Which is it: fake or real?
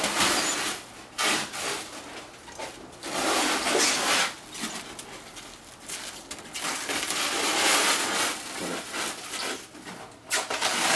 real